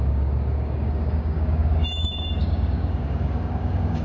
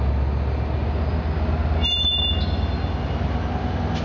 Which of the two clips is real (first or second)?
second